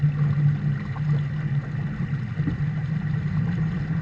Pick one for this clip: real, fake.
real